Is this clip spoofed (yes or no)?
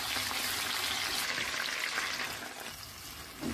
no